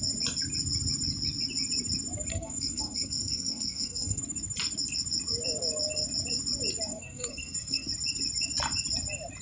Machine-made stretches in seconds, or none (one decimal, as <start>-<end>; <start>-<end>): 2.3-4.2; 6.9-7.9